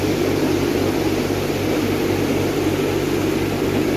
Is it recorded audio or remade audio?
recorded